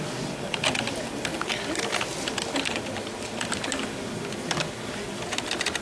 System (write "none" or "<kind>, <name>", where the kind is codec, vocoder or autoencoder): none